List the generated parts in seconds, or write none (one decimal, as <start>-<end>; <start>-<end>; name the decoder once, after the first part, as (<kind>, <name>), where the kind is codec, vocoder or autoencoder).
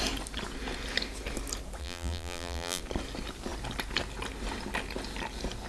1.8-2.8 (vocoder, BigVGAN v2)